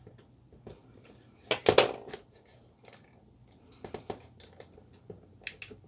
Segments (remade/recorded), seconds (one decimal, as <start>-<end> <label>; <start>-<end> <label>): 0.0-5.9 recorded